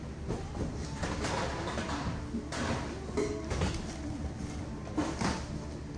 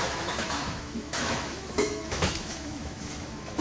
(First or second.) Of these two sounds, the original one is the first